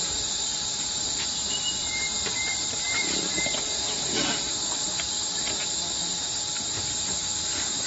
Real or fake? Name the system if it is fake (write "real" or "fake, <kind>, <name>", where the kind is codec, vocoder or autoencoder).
real